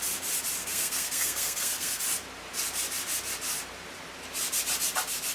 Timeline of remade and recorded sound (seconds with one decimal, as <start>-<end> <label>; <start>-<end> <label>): 0.0-0.6 recorded; 0.6-2.0 remade; 2.0-5.3 recorded